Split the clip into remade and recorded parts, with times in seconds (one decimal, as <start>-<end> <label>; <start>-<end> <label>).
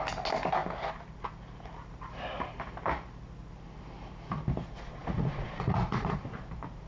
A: 0.0-5.0 recorded; 5.0-6.2 remade; 6.2-6.9 recorded